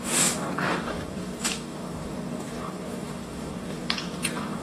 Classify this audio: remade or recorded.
remade